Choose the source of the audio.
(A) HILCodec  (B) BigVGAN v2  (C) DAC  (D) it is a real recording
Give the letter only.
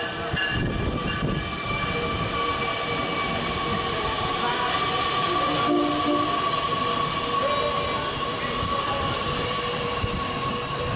D